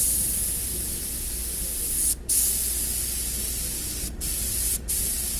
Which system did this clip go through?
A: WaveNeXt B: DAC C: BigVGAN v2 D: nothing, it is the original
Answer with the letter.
D